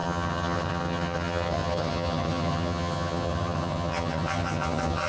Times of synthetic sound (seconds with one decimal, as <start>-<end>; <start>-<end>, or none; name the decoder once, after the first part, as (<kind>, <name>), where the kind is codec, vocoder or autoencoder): 0.0-5.1 (vocoder, HiFi-GAN)